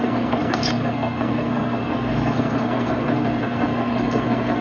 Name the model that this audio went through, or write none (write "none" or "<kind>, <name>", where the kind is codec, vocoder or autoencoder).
codec, SNAC